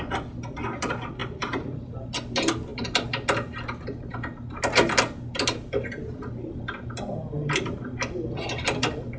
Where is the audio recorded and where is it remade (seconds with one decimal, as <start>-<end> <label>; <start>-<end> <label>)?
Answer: 0.0-1.2 recorded; 1.2-1.8 remade; 1.8-9.2 recorded